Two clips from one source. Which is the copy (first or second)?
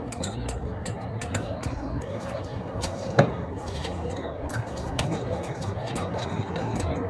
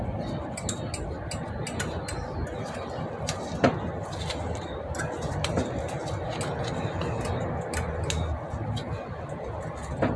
first